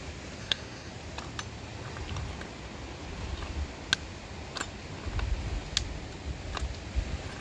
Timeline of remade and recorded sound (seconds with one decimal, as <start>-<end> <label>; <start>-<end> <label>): 0.0-0.4 recorded; 0.4-0.9 remade; 0.9-7.4 recorded